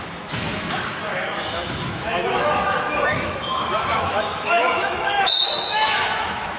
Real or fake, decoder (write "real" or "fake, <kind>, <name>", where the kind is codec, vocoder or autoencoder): fake, autoencoder, DAC-VAE